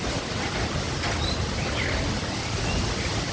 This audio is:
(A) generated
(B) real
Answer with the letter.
B